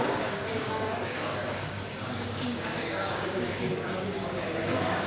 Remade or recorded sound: remade